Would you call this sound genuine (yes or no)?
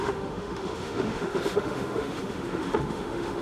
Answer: no